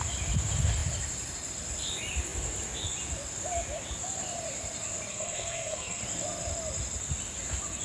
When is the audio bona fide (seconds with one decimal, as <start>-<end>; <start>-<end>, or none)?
0.0-5.1; 6.0-7.8